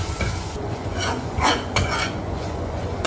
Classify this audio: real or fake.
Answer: fake